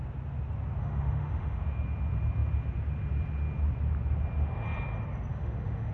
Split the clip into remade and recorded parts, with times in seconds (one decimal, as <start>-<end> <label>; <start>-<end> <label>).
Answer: 0.0-0.8 recorded; 0.8-1.6 remade; 1.6-5.3 recorded; 5.3-5.9 remade